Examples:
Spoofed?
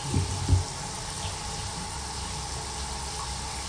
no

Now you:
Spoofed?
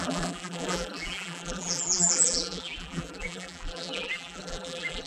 yes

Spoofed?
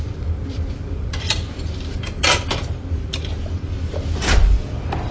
yes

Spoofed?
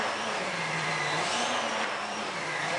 yes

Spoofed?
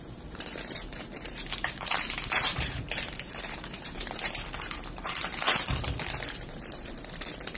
yes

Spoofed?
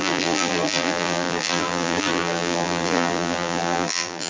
yes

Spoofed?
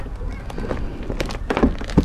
no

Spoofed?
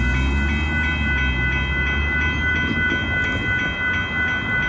no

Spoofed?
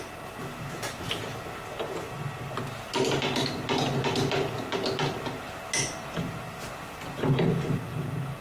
no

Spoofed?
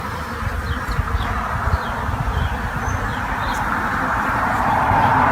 no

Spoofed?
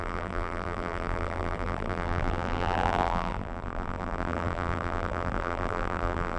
yes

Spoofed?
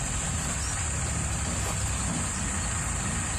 yes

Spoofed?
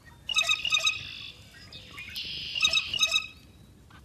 no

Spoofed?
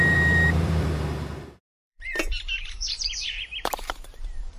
yes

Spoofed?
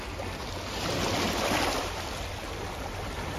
no